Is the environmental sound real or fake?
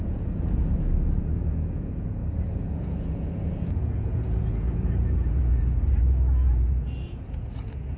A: fake